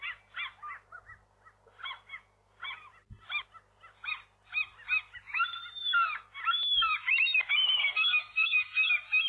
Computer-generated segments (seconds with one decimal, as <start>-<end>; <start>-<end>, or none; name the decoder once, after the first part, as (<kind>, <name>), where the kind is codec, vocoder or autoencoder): 7.8-8.9 (codec, SNAC)